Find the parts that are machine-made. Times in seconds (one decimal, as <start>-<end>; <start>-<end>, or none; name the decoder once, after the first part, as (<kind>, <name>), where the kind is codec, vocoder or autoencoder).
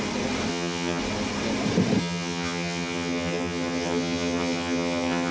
0.5-1.0 (vocoder, HiFi-GAN); 2.0-5.3